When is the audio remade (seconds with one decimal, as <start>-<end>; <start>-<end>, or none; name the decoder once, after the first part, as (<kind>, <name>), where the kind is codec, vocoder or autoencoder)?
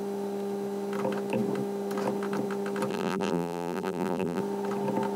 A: 2.9-4.4 (vocoder, BigVGAN v2)